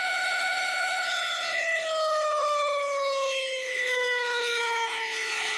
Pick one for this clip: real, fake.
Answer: fake